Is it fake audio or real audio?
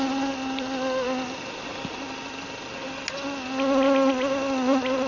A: real